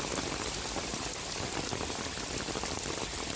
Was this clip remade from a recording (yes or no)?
no